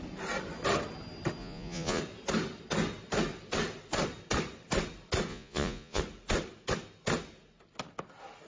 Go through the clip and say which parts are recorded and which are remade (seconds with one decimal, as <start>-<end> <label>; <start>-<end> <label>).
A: 0.0-1.4 recorded; 1.4-2.0 remade; 2.0-5.3 recorded; 5.3-6.0 remade; 6.0-8.5 recorded